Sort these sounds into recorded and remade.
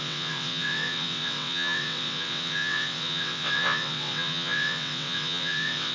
remade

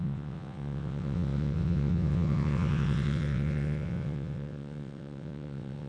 remade